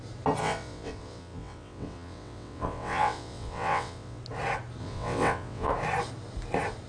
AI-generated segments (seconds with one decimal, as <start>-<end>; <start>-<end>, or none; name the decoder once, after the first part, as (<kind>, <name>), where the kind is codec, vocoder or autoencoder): 0.4-4.2 (vocoder, WaveNeXt); 4.8-5.7